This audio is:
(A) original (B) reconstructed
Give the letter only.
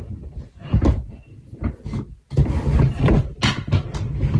A